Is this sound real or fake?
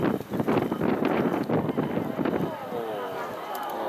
real